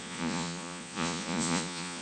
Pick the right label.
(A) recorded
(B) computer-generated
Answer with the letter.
B